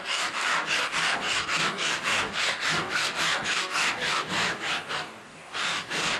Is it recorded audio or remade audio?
remade